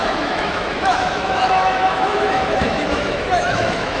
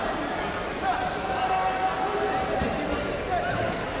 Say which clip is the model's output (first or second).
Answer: first